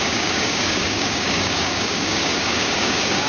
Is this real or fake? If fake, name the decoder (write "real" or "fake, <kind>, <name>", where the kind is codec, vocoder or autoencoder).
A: fake, codec, DAC